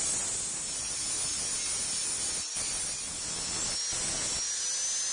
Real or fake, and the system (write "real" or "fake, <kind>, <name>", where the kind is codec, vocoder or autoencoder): real